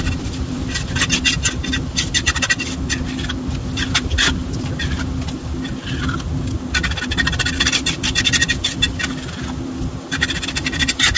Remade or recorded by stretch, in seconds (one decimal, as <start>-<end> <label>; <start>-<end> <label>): 0.0-4.4 recorded; 4.4-5.0 remade; 5.0-11.2 recorded